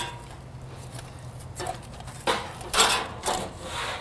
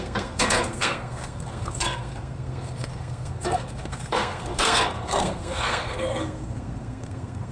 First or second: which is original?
first